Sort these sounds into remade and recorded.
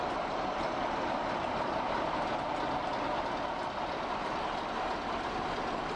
recorded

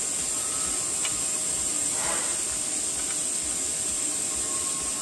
recorded